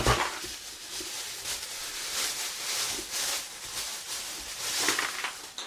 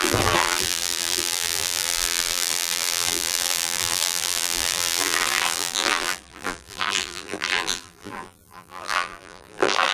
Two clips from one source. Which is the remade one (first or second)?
second